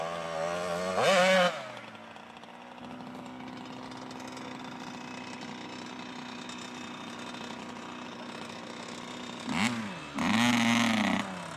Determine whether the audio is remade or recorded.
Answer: recorded